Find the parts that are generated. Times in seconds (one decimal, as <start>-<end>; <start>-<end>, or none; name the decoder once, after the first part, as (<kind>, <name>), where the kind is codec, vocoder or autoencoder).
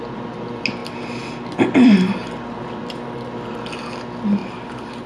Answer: 4.4-5.1 (vocoder, BigVGAN v2)